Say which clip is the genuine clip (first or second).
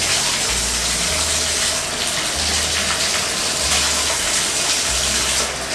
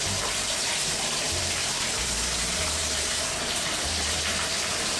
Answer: first